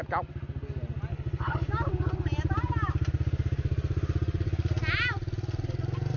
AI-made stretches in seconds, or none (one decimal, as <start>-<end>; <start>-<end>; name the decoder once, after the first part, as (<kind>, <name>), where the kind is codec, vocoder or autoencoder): 1.1-1.7 (codec, HILCodec)